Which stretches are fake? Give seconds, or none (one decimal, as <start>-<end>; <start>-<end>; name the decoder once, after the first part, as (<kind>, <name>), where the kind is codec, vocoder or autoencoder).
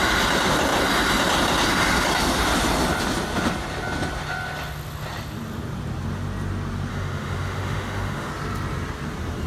6.9-8.3 (autoencoder, DAC-VAE)